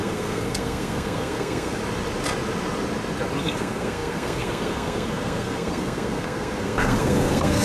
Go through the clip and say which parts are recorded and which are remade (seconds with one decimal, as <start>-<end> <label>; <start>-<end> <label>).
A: 0.0-1.8 remade; 1.8-3.4 recorded; 3.4-7.6 remade